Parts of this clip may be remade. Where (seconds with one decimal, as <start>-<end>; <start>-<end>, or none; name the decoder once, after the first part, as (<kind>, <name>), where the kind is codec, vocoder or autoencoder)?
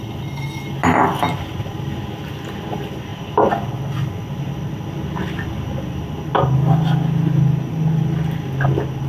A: none